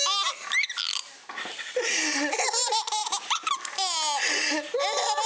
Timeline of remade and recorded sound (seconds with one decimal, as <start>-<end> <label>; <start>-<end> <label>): 0.0-5.3 recorded